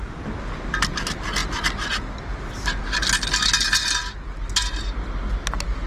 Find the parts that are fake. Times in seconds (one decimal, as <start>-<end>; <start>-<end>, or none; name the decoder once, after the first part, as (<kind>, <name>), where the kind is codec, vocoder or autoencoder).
none